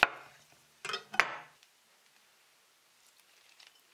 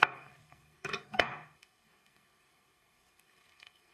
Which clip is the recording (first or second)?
first